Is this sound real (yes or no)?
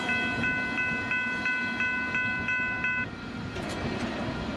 yes